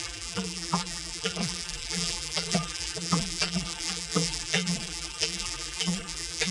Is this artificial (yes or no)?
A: yes